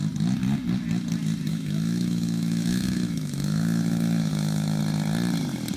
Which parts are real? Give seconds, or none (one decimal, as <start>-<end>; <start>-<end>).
0.0-1.5; 4.8-5.8